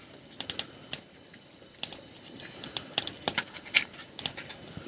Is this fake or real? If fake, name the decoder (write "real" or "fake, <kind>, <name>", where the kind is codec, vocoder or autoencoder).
real